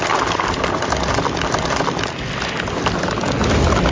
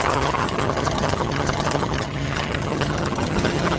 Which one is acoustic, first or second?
first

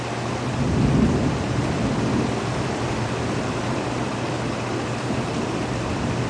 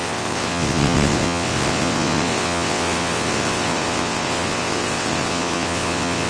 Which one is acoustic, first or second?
first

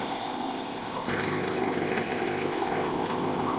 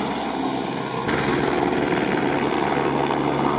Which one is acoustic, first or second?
second